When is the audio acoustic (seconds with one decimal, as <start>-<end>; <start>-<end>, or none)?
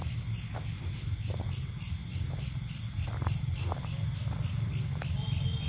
0.0-5.7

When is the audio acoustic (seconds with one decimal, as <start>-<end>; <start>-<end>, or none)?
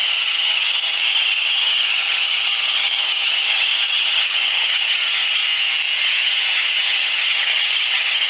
5.4-6.0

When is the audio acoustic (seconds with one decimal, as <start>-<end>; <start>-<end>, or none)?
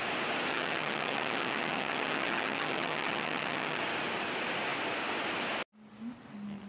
0.0-0.5; 3.8-6.7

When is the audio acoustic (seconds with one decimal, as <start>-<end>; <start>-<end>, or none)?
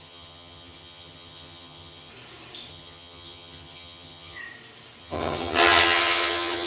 2.1-2.7; 4.4-5.0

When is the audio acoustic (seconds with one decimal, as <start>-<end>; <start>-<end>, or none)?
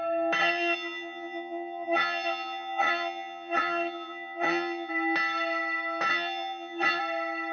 0.0-0.4; 4.9-6.1; 7.0-7.5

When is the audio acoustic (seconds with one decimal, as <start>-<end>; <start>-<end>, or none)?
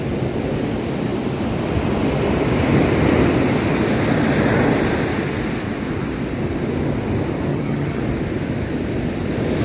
0.0-7.5; 8.0-9.6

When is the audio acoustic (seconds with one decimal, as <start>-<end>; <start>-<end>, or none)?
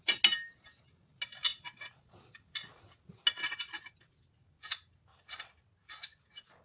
0.0-6.6